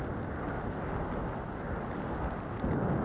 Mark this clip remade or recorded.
recorded